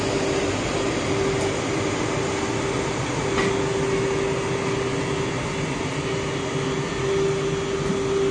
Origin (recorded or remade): recorded